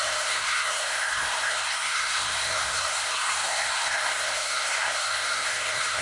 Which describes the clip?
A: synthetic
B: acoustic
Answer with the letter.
A